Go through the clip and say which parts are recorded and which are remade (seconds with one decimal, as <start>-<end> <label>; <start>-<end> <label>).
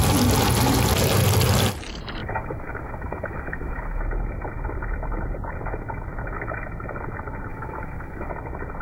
0.0-2.2 recorded; 2.2-4.0 remade; 4.0-7.5 recorded; 7.5-8.3 remade; 8.3-8.8 recorded